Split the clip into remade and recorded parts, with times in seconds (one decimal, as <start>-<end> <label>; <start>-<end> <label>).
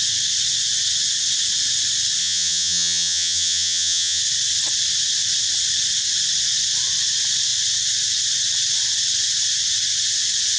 0.0-2.2 recorded; 2.2-4.2 remade; 4.2-10.6 recorded